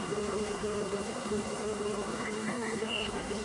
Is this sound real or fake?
fake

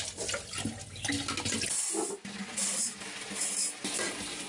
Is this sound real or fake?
real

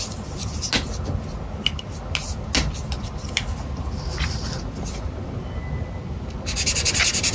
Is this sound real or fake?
real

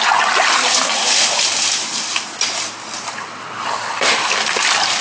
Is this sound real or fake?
real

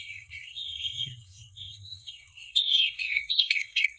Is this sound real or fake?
fake